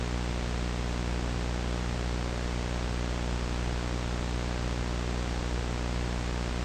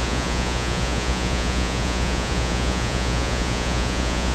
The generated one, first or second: second